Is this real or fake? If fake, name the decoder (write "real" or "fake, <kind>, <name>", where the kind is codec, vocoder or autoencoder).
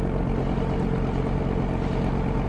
real